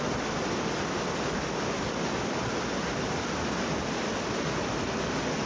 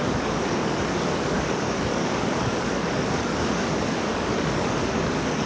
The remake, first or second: second